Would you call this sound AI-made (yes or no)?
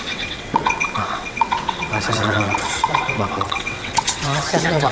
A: yes